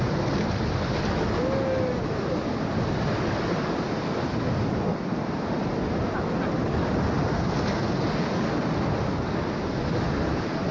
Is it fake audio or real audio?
real